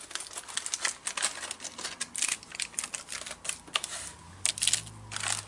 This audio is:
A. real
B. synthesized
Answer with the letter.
A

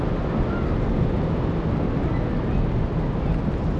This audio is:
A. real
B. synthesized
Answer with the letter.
A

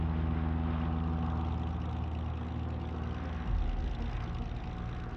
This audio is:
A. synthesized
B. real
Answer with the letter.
B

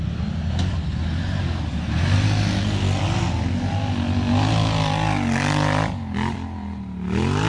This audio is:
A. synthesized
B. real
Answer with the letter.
B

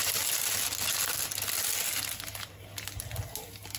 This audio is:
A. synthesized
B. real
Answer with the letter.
B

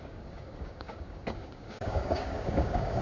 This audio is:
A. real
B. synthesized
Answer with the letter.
B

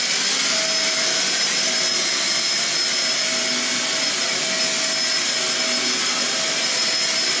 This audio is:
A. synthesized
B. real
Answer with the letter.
B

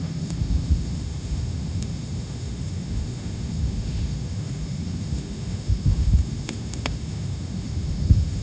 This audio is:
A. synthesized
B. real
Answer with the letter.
A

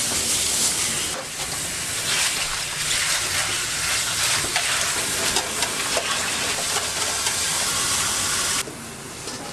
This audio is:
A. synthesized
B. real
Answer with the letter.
B